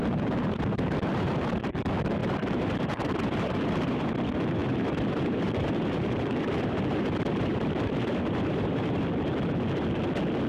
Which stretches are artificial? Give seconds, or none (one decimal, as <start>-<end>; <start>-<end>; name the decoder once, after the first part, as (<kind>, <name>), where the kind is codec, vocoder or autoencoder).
0.0-1.6 (vocoder, BigVGAN v2); 2.2-4.1; 4.6-9.0